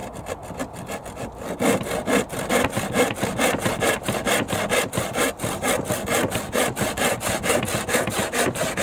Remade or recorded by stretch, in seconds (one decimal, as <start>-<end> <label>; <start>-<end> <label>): 0.0-8.8 recorded